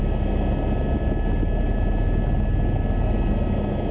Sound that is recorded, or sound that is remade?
recorded